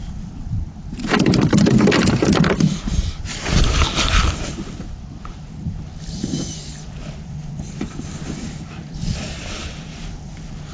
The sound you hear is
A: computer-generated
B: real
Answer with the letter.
A